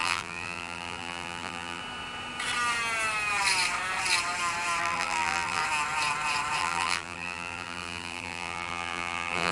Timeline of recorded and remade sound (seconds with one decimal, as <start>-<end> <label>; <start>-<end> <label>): 0.0-1.8 remade; 1.8-4.8 recorded; 4.8-5.6 remade; 5.6-6.6 recorded; 6.6-9.5 remade

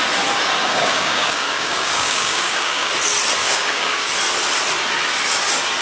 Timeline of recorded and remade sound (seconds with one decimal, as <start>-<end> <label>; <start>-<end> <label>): 0.0-0.6 recorded; 0.6-2.9 remade; 2.9-3.4 recorded; 3.4-4.1 remade; 4.1-5.8 recorded

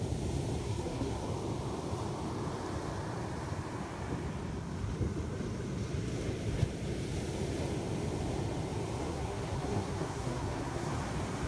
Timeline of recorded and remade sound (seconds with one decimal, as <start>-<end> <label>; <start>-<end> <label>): 0.0-0.6 recorded; 0.6-1.3 remade; 1.3-9.0 recorded; 9.0-10.9 remade; 10.9-11.5 recorded

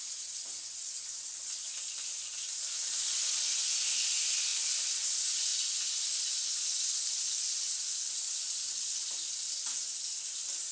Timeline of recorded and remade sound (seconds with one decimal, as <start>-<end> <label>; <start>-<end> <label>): 0.0-10.7 recorded

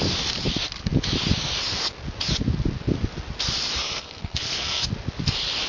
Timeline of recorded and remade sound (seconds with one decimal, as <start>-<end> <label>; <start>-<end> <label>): 0.0-3.8 recorded; 3.8-4.9 remade; 4.9-5.7 recorded

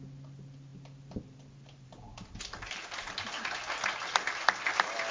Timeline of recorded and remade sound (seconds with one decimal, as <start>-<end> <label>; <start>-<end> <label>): 0.0-5.1 recorded